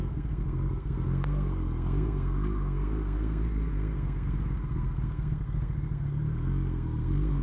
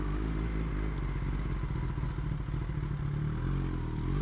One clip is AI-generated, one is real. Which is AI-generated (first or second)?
first